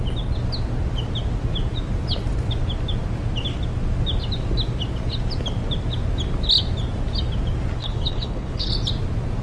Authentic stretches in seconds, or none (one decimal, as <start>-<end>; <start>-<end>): 0.0-7.8; 8.7-9.4